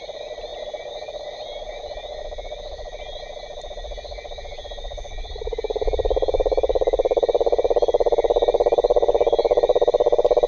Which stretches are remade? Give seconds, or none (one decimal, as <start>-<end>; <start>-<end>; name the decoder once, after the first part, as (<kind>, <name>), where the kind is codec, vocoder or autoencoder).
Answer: none